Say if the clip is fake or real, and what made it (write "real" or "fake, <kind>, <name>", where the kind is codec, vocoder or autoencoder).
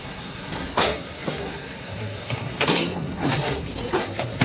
fake, codec, SNAC